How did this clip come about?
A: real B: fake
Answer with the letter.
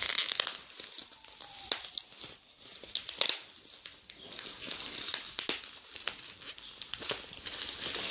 A